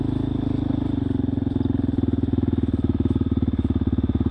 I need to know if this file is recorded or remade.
recorded